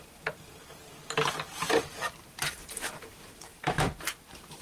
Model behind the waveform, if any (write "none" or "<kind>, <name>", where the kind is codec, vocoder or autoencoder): vocoder, BigVGAN v2